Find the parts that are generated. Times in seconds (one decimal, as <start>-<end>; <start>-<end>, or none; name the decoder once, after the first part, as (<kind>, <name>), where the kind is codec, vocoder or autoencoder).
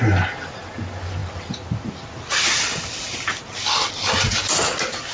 none